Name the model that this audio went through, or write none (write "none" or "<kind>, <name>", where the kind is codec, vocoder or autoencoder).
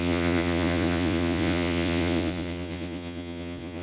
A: vocoder, Vocos